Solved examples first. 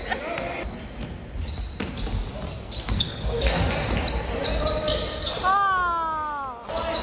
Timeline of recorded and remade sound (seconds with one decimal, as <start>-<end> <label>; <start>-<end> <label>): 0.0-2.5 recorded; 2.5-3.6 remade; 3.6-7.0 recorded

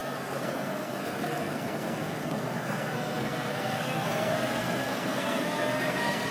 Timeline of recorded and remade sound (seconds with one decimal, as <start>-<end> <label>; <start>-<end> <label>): 0.0-6.3 remade

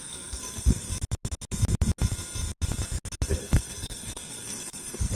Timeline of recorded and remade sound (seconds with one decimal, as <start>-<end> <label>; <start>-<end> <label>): 0.0-0.9 remade; 0.9-3.3 recorded; 3.3-5.1 remade

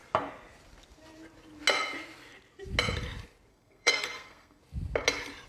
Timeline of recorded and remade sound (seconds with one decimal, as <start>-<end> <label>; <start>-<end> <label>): 0.0-3.5 recorded; 3.5-4.6 remade; 4.6-5.5 recorded

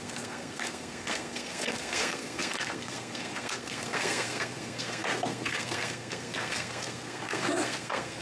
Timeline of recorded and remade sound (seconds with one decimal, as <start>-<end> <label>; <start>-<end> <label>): 0.0-8.2 remade

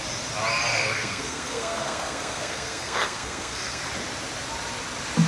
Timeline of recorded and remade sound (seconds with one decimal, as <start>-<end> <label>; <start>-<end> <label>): 0.0-0.7 recorded; 0.7-3.8 remade; 3.8-5.3 recorded